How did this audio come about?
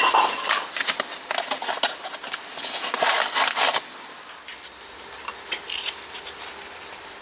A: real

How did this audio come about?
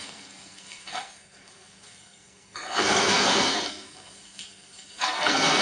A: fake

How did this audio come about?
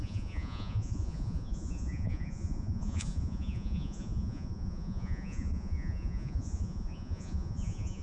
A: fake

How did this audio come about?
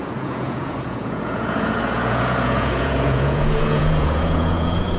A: fake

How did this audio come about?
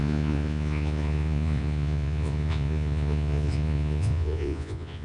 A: fake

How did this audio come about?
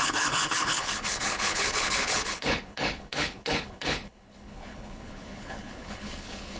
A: fake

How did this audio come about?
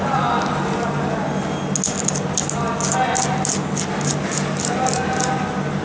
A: real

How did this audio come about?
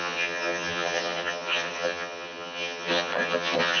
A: fake